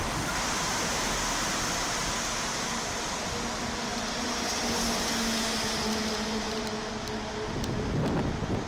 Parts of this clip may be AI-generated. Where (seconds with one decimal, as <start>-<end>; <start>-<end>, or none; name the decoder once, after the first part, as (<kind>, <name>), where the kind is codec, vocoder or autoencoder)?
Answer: 3.9-4.5 (vocoder, BigVGAN v2)